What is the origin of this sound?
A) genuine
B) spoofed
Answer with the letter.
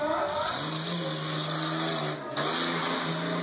A